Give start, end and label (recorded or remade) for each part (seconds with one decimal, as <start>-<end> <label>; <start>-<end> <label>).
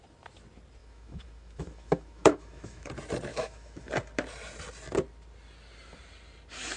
0.0-0.8 recorded; 0.8-2.9 remade; 2.9-3.3 recorded; 3.3-3.9 remade; 3.9-6.8 recorded